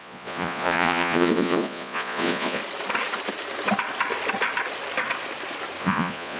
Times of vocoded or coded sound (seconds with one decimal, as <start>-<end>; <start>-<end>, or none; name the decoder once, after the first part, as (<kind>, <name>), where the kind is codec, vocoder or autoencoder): 0.0-2.6 (vocoder, Vocos); 5.8-6.4